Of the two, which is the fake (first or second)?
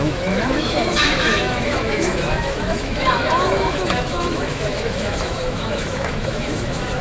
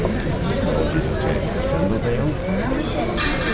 first